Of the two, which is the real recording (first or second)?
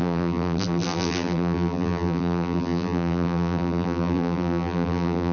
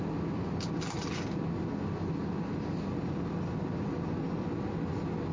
second